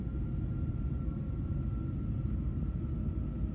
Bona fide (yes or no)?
yes